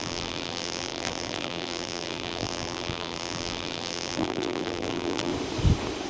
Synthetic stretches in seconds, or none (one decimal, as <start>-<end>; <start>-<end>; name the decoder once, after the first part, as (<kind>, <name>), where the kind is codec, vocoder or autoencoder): 0.0-5.3 (vocoder, BigVGAN v2)